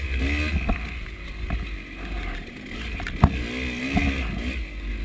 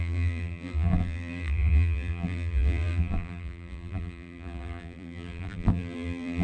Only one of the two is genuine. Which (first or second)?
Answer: first